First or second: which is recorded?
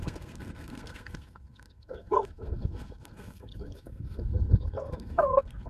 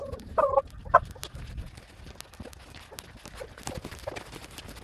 second